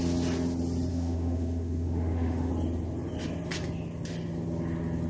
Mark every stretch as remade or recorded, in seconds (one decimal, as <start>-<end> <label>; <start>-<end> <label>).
0.0-0.9 recorded; 0.9-2.5 remade; 2.5-5.1 recorded